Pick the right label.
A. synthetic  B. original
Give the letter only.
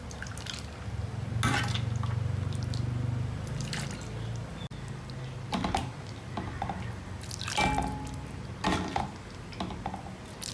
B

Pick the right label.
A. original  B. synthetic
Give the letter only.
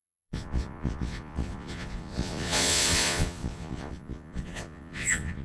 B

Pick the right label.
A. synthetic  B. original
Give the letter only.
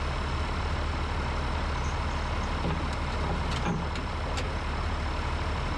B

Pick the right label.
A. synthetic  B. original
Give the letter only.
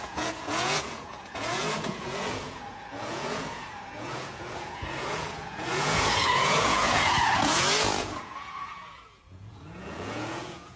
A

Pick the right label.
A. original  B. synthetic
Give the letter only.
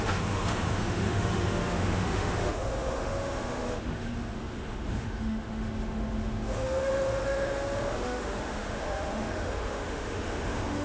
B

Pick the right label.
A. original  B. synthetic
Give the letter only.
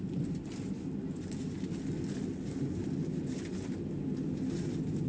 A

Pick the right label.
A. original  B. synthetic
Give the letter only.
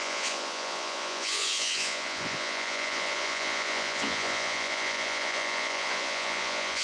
B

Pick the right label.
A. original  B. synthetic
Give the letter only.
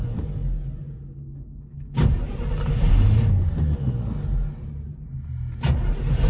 A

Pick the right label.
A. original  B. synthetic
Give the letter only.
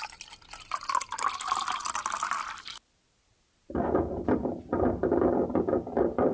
A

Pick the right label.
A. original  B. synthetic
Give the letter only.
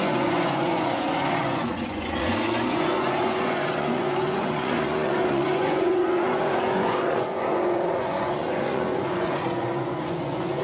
B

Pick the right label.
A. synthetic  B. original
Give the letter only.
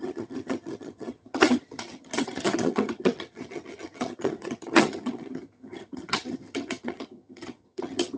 A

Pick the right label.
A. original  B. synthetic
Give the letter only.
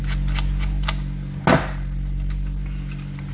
A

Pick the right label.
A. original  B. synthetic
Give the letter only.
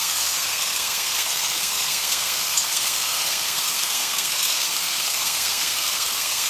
B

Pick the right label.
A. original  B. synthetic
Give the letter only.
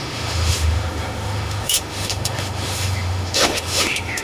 B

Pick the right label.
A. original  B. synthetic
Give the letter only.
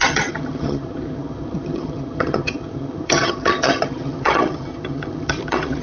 B